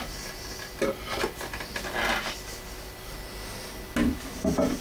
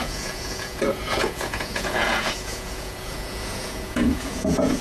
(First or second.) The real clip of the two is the first